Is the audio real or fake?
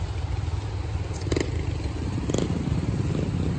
real